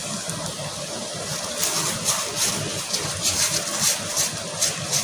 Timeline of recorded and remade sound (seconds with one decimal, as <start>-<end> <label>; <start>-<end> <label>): 0.0-5.0 recorded